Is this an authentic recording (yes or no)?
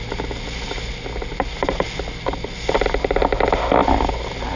yes